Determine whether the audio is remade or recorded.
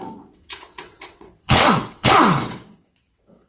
remade